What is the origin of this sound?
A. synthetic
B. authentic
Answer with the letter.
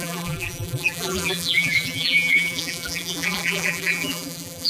A